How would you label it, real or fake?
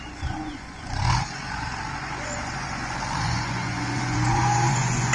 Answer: fake